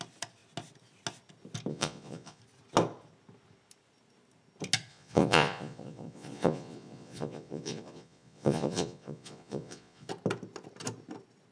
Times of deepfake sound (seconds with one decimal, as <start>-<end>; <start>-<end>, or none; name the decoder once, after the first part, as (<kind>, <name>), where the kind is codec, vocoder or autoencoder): 1.7-2.4 (vocoder, Vocos); 4.9-10.1